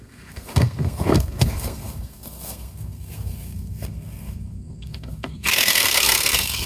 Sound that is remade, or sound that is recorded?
remade